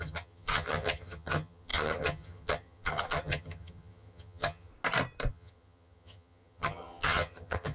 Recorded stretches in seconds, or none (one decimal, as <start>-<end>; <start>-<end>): 4.7-5.3